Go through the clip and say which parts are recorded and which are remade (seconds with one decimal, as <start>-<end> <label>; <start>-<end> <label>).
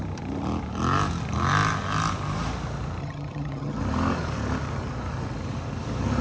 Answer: 0.0-3.0 recorded; 3.0-3.8 remade; 3.8-6.2 recorded